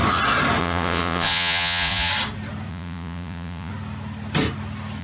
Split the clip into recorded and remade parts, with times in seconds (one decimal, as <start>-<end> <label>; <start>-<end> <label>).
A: 0.0-0.6 recorded; 0.6-2.1 remade; 2.1-2.7 recorded; 2.7-3.7 remade; 3.7-5.0 recorded